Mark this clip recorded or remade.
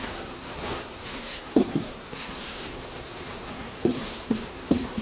remade